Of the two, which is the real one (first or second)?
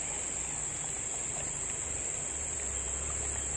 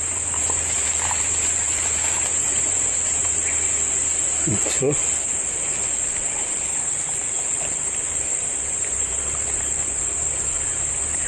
first